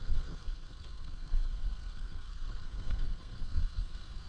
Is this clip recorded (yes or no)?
no